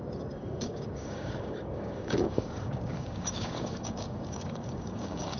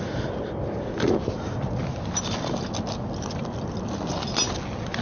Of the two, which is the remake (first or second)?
first